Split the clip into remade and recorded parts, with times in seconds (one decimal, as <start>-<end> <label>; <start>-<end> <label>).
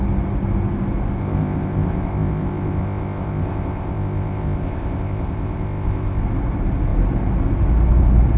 0.0-1.2 recorded; 1.2-6.2 remade; 6.2-8.4 recorded